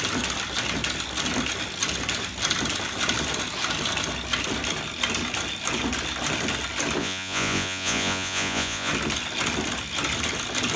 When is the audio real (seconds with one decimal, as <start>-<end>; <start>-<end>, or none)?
0.0-7.0; 8.9-10.8